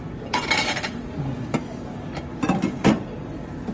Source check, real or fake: fake